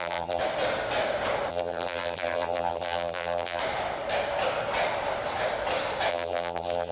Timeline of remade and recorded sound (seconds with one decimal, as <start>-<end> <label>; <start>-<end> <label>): 0.0-0.4 remade; 0.4-1.5 recorded; 1.5-3.6 remade; 3.6-6.1 recorded; 6.1-6.9 remade